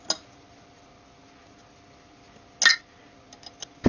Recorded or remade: recorded